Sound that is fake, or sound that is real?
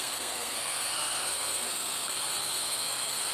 fake